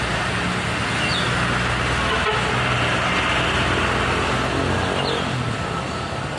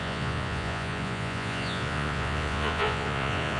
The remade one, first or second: second